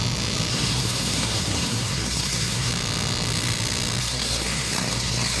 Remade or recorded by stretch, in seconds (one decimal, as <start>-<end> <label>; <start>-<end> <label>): 0.0-0.5 recorded; 0.5-2.7 remade; 2.7-4.0 recorded; 4.0-5.4 remade